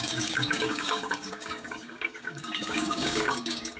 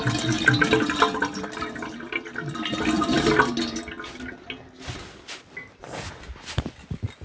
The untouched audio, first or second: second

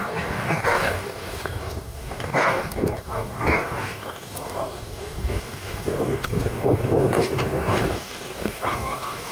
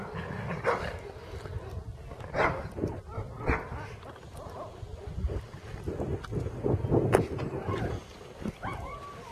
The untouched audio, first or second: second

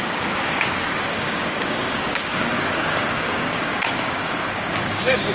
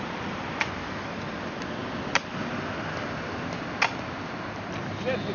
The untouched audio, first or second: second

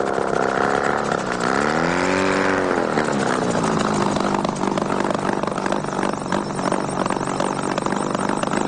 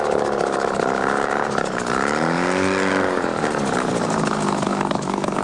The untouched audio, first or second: first